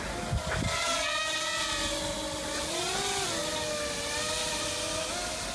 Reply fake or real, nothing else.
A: real